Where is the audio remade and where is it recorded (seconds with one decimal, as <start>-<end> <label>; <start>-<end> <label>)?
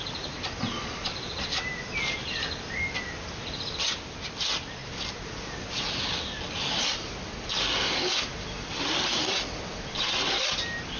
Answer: 0.0-0.7 recorded; 0.7-1.6 remade; 1.6-11.0 recorded